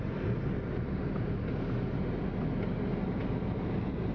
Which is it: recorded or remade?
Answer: recorded